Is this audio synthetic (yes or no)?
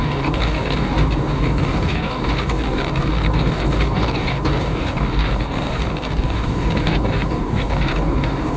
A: yes